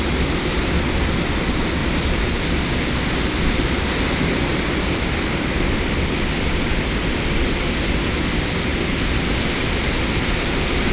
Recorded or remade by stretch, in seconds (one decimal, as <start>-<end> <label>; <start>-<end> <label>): 0.0-1.8 recorded; 1.8-6.6 remade; 6.6-10.9 recorded